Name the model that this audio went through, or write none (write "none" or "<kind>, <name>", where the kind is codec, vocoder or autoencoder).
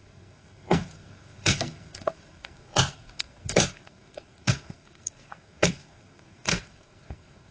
codec, SNAC